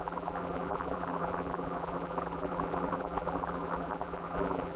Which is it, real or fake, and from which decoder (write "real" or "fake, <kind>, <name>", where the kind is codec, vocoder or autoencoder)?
fake, vocoder, BigVGAN v2